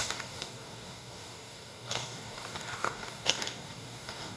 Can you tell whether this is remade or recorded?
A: remade